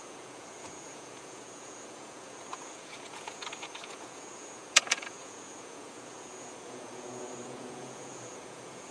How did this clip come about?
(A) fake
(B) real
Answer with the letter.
A